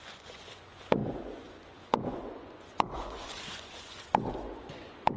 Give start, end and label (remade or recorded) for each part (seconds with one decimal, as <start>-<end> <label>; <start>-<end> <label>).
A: 0.0-5.2 remade